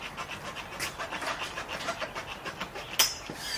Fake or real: real